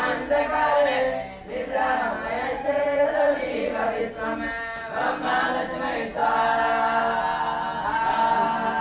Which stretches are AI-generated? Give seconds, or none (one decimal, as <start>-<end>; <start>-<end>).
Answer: 2.5-4.1